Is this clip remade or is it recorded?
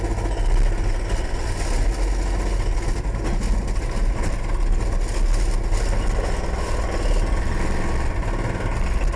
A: recorded